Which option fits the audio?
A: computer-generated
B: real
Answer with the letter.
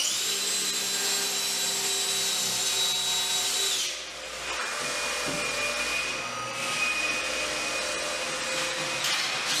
B